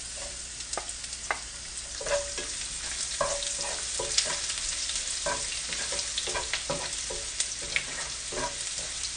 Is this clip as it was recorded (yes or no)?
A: yes